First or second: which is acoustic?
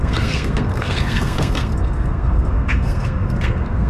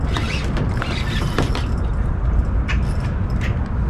second